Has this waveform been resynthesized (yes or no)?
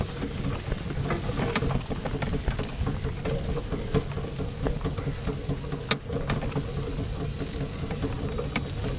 no